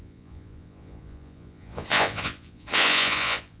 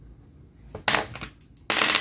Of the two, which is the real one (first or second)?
second